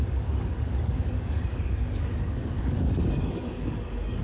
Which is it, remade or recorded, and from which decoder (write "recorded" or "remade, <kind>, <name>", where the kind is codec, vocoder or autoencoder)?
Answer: remade, codec, DAC